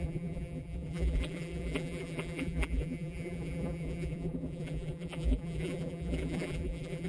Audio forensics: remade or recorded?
remade